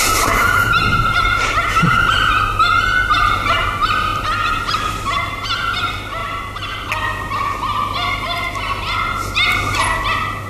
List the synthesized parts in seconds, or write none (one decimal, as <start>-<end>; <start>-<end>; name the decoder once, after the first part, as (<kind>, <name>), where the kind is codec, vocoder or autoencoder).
none